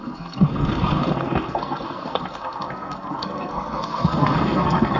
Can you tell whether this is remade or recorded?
remade